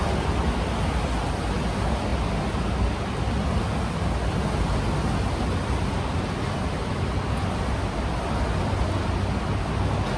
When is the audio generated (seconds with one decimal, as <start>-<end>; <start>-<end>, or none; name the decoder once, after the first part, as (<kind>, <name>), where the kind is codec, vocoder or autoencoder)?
none